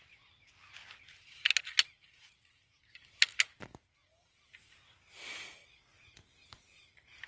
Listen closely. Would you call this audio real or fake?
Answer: real